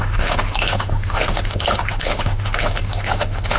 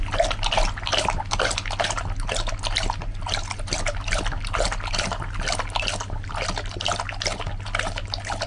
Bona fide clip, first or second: second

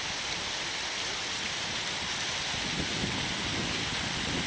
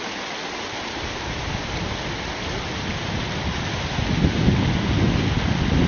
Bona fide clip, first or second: second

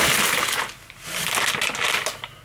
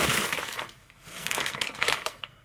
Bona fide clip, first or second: first